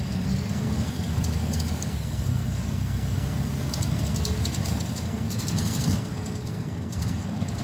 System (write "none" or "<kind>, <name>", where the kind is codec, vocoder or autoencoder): codec, SNAC